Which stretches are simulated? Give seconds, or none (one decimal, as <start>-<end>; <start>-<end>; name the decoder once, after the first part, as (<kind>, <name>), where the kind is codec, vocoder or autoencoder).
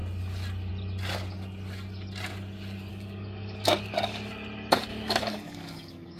2.9-4.3 (codec, DAC); 4.9-6.2